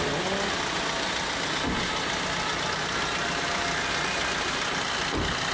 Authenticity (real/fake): real